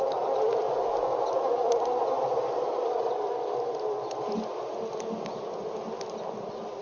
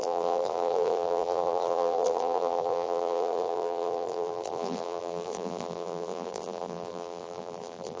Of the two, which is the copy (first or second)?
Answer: second